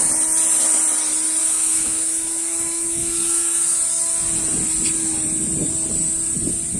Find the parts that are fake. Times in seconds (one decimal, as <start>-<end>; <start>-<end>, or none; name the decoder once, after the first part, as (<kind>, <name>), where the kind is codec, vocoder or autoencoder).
1.4-3.8 (autoencoder, DAC-VAE)